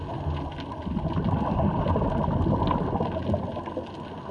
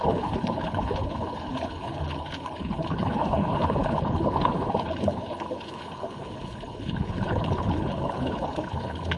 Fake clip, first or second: second